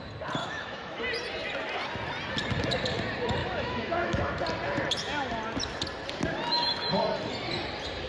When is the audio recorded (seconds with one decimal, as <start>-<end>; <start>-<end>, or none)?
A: 0.0-0.4; 1.0-3.4; 4.3-6.5; 7.0-8.1

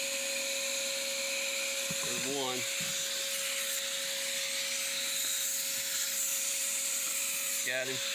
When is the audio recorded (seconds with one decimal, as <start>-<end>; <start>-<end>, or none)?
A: 0.0-6.3; 7.5-8.1

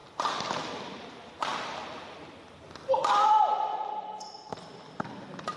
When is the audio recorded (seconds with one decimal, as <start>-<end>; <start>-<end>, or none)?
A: 0.0-5.6